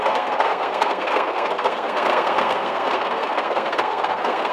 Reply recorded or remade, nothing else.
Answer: remade